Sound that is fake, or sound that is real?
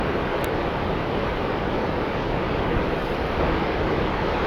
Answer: fake